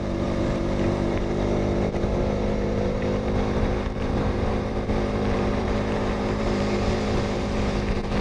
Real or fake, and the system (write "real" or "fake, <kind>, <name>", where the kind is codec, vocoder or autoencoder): fake, vocoder, BigVGAN v2